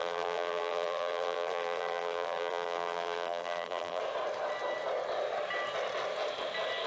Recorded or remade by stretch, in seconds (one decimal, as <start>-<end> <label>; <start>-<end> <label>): 0.0-4.0 remade; 4.0-6.9 recorded